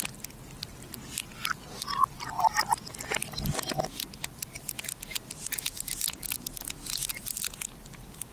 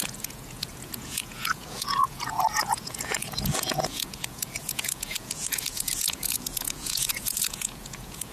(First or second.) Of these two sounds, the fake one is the second